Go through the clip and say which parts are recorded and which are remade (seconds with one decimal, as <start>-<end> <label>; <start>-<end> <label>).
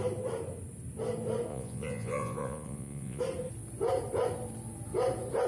0.0-1.5 recorded; 1.5-3.2 remade; 3.2-5.5 recorded